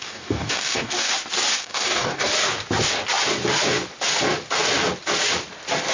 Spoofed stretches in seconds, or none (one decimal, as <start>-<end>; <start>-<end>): 0.0-1.1; 1.6-2.3